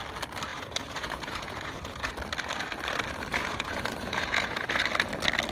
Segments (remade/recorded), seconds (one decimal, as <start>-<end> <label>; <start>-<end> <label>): 0.0-0.5 recorded; 0.5-2.1 remade; 2.1-3.3 recorded; 3.3-4.8 remade; 4.8-5.5 recorded